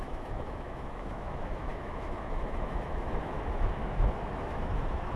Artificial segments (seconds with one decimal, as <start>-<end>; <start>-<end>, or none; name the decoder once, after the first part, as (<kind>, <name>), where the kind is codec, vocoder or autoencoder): 0.0-5.2 (autoencoder, DAC-VAE)